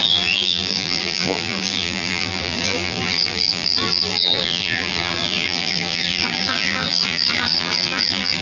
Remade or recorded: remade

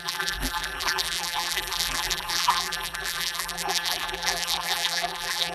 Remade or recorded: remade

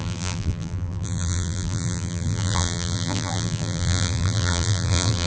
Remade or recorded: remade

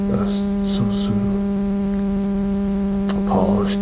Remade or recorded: recorded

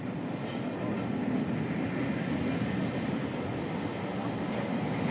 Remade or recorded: recorded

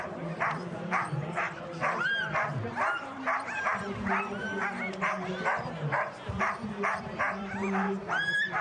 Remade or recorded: remade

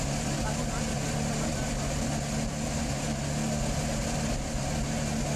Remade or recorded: recorded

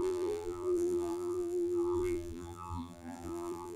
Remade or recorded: remade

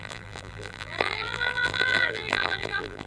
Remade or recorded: remade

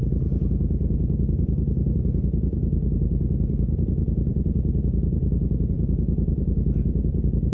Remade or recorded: remade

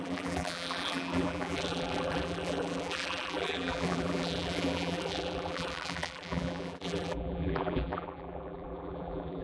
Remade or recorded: remade